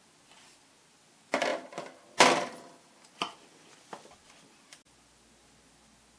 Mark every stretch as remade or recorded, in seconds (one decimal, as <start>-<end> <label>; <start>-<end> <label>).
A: 0.0-6.2 recorded